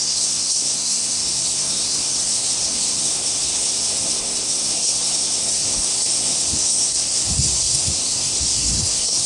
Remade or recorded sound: remade